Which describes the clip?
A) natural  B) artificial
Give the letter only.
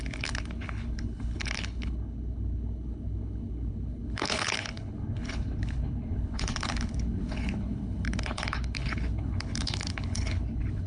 B